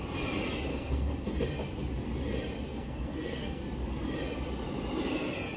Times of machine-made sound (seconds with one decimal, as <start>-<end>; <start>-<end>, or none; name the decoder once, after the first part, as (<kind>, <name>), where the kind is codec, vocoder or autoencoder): 0.7-1.3 (codec, SNAC); 2.7-3.6